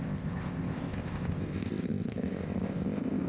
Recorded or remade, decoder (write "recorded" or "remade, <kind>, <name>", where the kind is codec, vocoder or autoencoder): remade, codec, ZipCodec